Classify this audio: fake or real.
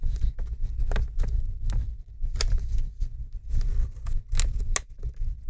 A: real